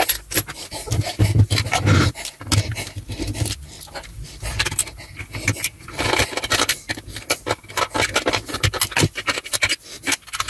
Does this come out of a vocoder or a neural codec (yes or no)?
no